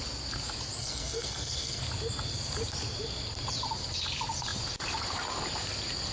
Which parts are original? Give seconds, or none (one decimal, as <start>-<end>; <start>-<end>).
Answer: 0.0-0.8; 1.8-6.1